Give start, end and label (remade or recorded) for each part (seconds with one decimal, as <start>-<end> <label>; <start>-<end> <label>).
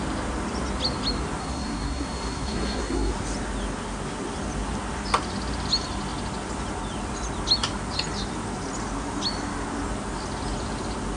0.0-1.4 recorded; 1.4-3.1 remade; 3.1-11.2 recorded